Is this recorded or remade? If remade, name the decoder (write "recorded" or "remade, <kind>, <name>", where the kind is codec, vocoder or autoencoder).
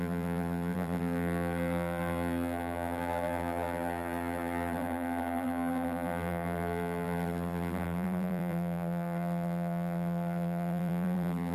remade, vocoder, BigVGAN v2